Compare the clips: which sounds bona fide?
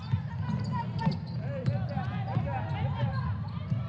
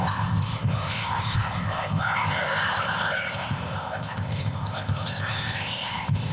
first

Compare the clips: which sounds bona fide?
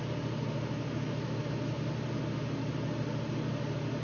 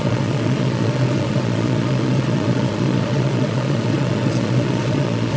first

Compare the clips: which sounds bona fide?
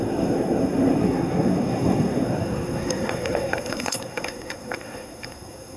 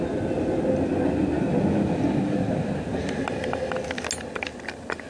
second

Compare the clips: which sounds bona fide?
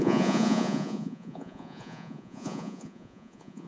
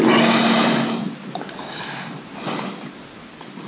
second